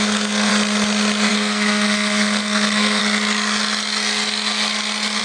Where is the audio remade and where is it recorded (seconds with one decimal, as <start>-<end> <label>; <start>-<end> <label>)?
0.0-0.5 remade; 0.5-1.3 recorded; 1.3-3.0 remade; 3.0-5.2 recorded